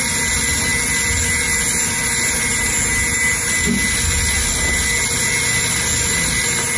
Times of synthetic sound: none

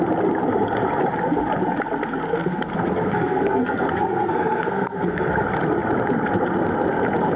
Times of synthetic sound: 2.5-5.3 (codec, SNAC)

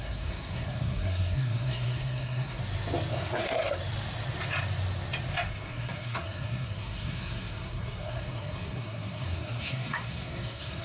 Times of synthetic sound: 0.0-2.6 (codec, SNAC); 3.1-3.8; 5.5-10.8

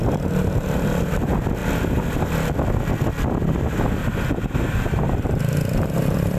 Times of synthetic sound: none

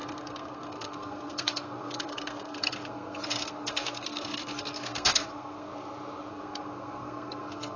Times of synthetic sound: 0.0-5.7 (codec, SNAC); 6.3-7.8